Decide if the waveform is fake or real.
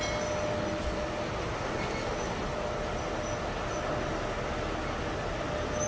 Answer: real